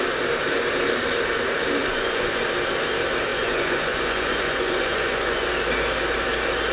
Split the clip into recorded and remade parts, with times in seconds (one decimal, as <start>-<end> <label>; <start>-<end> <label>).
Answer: 0.0-1.8 recorded; 1.8-2.4 remade; 2.4-3.3 recorded; 3.3-5.5 remade; 5.5-6.7 recorded